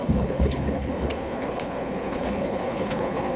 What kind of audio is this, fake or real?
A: fake